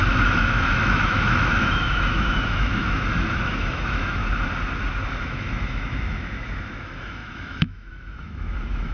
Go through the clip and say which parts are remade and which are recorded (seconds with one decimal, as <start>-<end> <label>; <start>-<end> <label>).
0.0-4.2 remade; 4.2-5.1 recorded; 5.1-8.9 remade